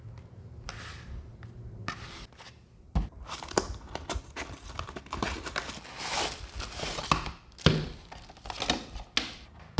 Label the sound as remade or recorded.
recorded